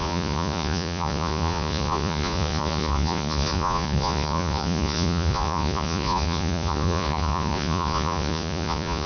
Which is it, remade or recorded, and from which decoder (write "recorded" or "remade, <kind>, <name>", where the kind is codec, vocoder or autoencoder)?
remade, vocoder, Vocos